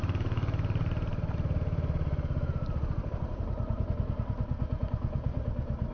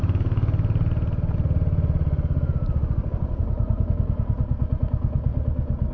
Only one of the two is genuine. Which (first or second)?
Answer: second